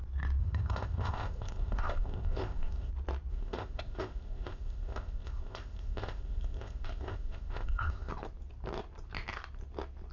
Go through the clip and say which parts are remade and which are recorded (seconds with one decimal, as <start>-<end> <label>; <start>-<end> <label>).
0.0-0.4 recorded; 0.4-2.9 remade; 2.9-3.3 recorded; 3.3-8.1 remade; 8.1-10.1 recorded